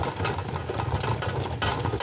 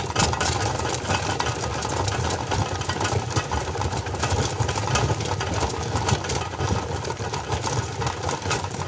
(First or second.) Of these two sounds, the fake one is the second